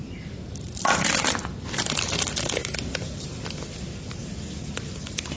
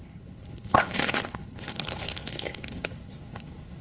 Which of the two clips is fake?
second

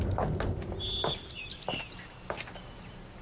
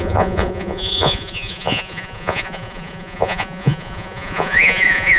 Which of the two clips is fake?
second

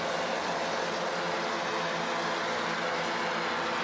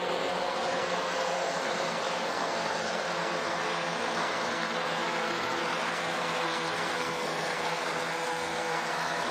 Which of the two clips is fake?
second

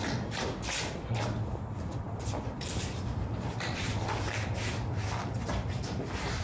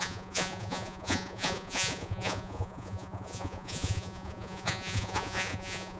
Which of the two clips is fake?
second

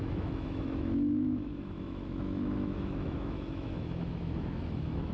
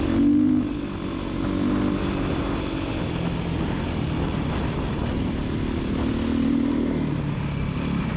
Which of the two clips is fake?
first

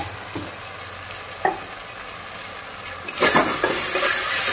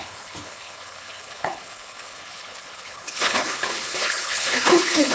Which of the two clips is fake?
second